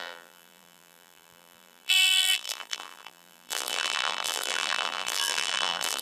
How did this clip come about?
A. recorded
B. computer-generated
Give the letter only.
B